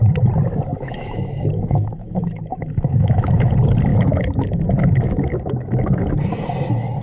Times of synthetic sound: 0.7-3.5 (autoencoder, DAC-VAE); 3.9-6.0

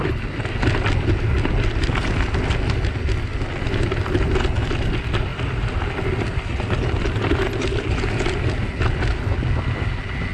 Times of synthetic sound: none

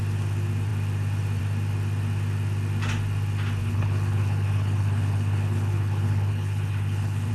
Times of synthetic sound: 3.6-7.3 (codec, HILCodec)

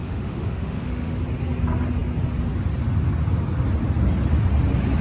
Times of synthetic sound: 0.0-1.2 (autoencoder, DAC-VAE)

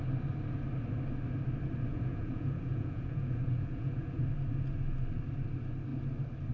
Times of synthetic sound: 1.9-4.2 (vocoder, Vocos)